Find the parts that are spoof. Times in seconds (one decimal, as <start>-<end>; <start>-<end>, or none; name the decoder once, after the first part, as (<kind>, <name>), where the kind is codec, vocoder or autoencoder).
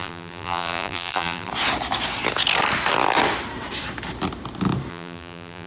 0.0-1.5 (vocoder, BigVGAN v2); 4.9-5.7